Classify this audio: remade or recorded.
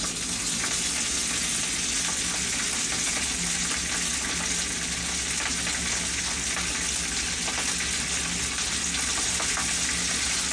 recorded